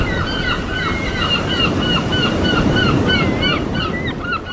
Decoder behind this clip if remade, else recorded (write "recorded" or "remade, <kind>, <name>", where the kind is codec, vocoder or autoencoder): recorded